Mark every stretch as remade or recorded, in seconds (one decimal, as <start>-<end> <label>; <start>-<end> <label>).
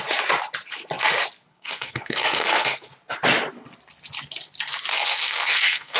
0.0-1.5 recorded; 1.5-2.9 remade; 2.9-4.9 recorded; 4.9-6.0 remade